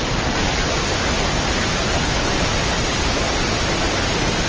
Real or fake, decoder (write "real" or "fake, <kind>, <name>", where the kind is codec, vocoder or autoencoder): real